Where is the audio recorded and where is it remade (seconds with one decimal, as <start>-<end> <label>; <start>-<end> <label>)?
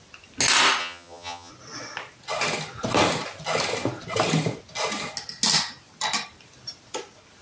0.0-0.8 recorded; 0.8-1.5 remade; 1.5-7.4 recorded